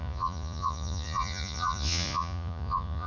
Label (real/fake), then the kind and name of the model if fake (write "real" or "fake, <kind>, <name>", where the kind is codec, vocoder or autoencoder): fake, vocoder, Vocos